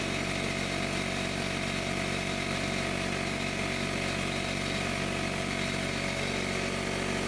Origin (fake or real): real